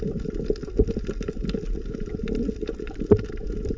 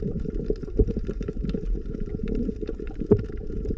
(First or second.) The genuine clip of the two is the first